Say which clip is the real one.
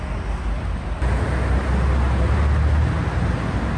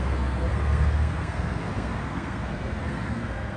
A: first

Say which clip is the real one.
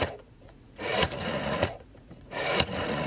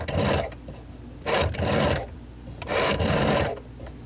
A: second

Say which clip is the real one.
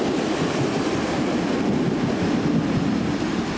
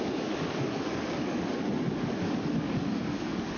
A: first